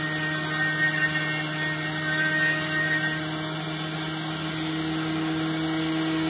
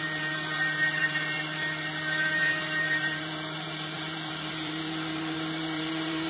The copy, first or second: second